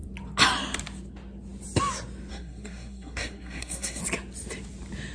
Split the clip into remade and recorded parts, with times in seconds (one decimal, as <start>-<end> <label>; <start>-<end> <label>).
0.0-2.3 recorded; 2.3-4.0 remade; 4.0-5.1 recorded